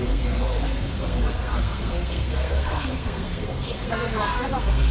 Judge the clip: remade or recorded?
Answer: remade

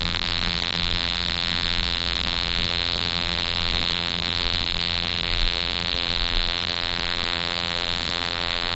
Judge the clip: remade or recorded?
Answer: remade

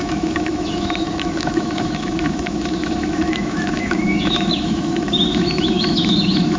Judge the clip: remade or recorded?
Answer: remade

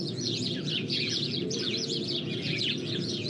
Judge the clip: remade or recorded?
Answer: remade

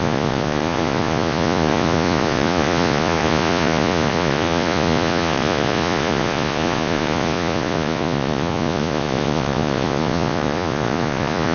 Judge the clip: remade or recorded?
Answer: remade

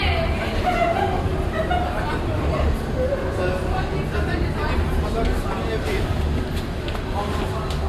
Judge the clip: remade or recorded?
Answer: recorded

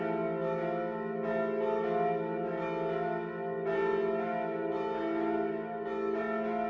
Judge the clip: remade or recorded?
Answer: recorded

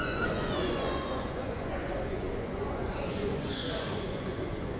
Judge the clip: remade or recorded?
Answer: remade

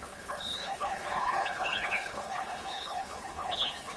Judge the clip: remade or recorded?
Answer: remade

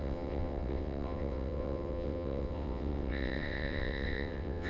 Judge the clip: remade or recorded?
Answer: remade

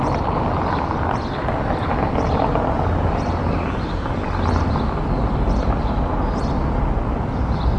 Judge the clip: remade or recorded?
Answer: recorded